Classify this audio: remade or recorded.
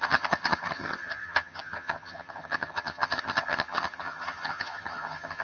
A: remade